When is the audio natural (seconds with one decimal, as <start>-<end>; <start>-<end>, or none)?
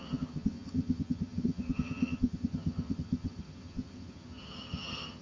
none